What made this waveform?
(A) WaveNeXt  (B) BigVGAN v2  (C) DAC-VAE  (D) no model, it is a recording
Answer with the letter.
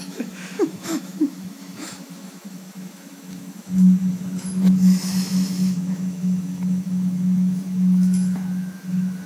C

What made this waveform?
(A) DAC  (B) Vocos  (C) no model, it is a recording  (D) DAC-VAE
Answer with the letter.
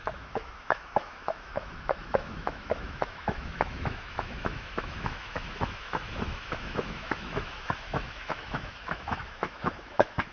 D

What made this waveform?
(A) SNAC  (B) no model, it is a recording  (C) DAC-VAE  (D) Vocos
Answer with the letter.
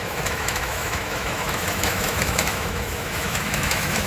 C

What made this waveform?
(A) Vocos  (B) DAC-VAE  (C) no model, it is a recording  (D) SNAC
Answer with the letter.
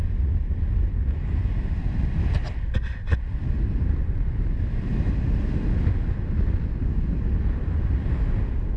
C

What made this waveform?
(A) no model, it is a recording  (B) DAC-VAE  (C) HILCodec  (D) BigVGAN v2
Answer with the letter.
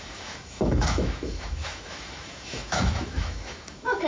B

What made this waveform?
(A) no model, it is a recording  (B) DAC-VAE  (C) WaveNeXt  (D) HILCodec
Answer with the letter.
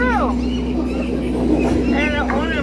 A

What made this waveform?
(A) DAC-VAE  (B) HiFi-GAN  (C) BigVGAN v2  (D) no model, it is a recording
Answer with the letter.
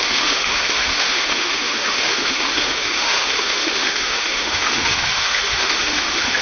A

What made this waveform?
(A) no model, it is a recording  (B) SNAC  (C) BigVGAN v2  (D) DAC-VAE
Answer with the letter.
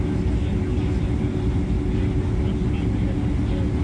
A